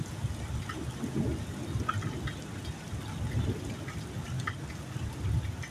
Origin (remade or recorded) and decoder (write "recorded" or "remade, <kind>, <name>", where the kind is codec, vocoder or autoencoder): recorded